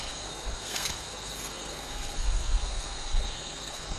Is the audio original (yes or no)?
no